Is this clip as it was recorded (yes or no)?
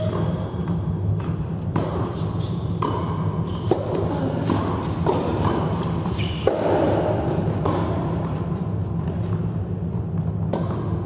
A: yes